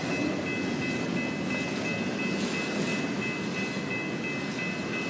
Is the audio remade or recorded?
recorded